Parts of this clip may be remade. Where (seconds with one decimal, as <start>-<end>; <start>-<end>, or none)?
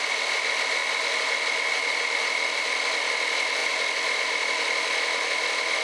0.0-0.8; 1.8-5.8